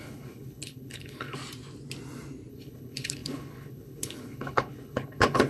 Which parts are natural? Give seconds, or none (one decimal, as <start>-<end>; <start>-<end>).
1.4-2.5